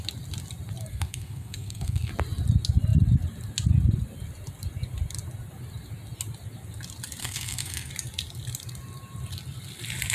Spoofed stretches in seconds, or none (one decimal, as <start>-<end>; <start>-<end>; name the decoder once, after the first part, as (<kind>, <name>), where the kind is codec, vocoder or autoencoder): 0.9-2.1 (codec, SNAC); 7.2-7.9